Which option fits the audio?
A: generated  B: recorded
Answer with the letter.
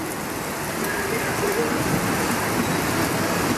B